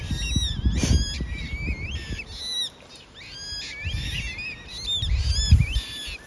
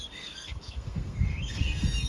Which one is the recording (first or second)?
first